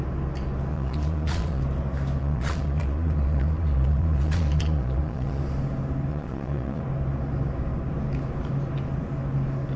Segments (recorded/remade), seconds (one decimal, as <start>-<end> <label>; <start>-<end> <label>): 0.0-0.7 recorded; 0.7-1.6 remade; 1.6-2.2 recorded; 2.2-5.4 remade; 5.4-6.1 recorded; 6.1-6.8 remade; 6.8-9.8 recorded